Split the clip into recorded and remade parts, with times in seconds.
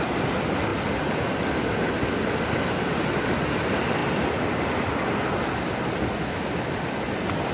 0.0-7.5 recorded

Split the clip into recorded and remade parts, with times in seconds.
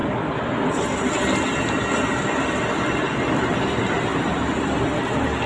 0.0-5.5 recorded